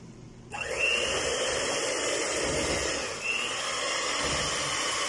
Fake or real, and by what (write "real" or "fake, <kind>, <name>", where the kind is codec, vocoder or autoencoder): real